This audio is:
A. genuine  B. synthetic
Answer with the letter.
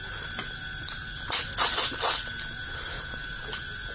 A